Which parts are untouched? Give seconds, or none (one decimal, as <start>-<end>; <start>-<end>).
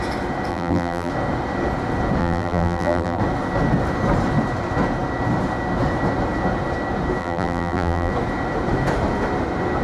0.0-0.5; 1.1-2.2; 3.2-7.2; 8.1-9.8